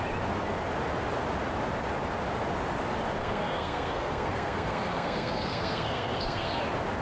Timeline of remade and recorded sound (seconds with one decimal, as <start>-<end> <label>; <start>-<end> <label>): 0.0-3.2 recorded; 3.2-6.6 remade; 6.6-7.0 recorded